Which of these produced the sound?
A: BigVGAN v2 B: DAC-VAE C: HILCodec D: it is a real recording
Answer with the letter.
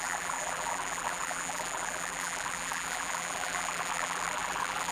A